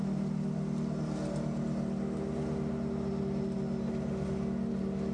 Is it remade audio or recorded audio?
recorded